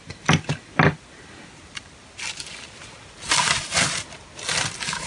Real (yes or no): yes